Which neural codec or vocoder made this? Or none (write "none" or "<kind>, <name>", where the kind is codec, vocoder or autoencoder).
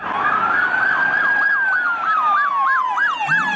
none